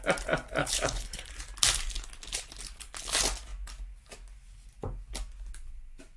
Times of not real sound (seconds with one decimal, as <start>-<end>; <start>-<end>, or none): 0.6-1.3